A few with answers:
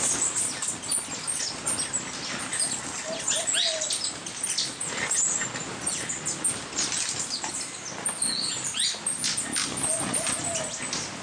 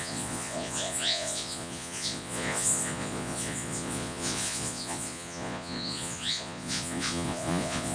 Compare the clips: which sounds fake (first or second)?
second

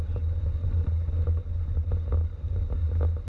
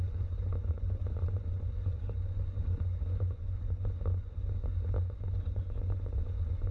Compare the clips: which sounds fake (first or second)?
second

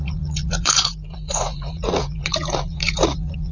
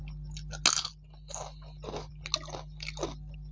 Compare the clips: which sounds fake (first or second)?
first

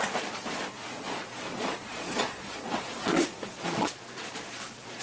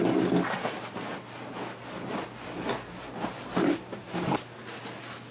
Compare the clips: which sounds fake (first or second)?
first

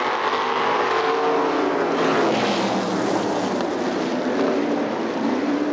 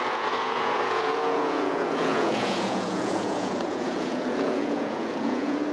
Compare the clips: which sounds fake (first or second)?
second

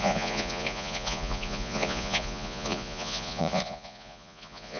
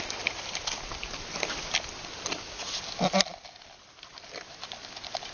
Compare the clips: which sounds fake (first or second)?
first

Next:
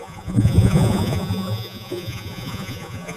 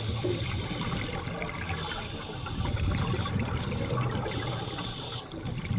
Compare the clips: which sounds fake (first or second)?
first